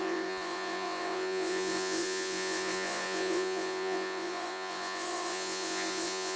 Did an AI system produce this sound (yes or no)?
yes